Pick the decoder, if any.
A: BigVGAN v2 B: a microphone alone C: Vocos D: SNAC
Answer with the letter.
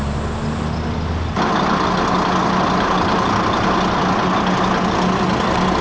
B